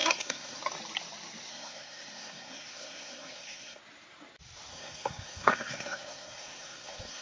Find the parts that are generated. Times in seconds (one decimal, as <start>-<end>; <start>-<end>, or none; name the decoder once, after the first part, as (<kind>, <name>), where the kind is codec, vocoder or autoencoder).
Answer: 0.0-0.6 (codec, SNAC); 1.5-3.8; 4.7-7.2